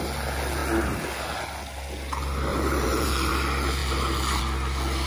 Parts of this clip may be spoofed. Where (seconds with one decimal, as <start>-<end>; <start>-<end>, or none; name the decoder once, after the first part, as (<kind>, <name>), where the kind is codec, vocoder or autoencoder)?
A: 2.5-3.3 (vocoder, BigVGAN v2)